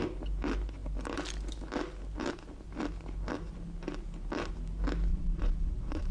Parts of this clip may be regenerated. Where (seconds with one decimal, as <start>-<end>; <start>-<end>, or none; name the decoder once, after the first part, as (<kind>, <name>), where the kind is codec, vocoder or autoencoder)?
5.1-6.1 (vocoder, Vocos)